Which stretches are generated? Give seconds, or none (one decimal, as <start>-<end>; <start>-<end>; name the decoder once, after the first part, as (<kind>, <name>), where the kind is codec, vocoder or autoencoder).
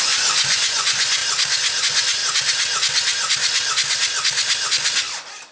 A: 0.0-1.2 (vocoder, Vocos); 1.8-2.2